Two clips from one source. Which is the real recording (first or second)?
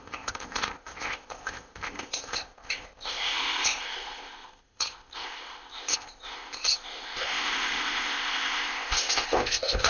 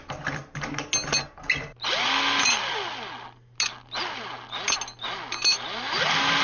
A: second